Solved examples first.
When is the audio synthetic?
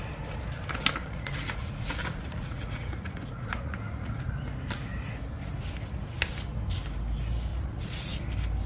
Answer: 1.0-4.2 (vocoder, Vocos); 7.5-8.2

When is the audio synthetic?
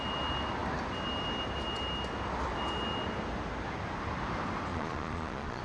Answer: 4.7-5.6 (vocoder, Vocos)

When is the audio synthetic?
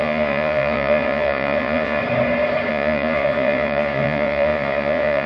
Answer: 0.0-2.0 (vocoder, Vocos); 2.7-5.3